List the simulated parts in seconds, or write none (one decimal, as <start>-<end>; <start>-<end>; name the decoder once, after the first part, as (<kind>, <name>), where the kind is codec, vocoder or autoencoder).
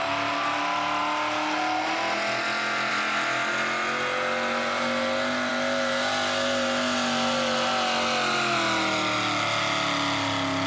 none